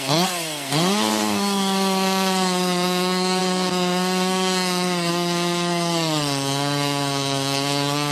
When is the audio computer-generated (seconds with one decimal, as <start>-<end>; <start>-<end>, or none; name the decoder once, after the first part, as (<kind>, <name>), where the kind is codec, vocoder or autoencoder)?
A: 0.0-8.1 (codec, SNAC)